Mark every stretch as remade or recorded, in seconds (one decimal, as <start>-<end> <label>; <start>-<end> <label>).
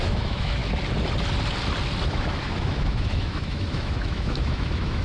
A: 0.0-0.6 remade; 0.6-2.1 recorded; 2.1-5.0 remade